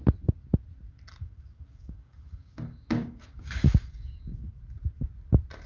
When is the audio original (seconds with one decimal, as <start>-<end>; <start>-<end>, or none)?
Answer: 0.0-1.2; 4.6-5.7